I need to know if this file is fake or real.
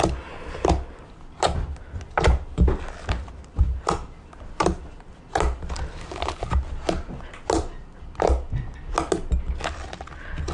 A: real